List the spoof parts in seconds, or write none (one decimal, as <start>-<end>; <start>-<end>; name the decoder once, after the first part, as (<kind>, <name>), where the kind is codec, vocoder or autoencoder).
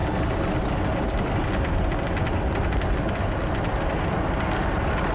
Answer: none